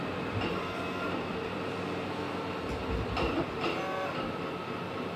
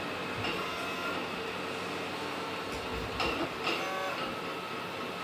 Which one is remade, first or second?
first